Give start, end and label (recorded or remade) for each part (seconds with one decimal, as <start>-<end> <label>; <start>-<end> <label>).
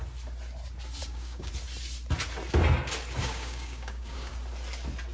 0.0-1.0 recorded; 1.0-1.5 remade; 1.5-3.2 recorded; 3.2-4.3 remade; 4.3-5.1 recorded